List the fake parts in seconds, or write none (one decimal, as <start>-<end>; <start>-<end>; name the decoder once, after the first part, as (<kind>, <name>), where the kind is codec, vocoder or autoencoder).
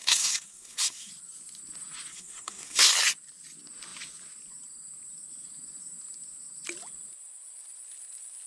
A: 0.0-1.1 (codec, SNAC); 2.1-2.9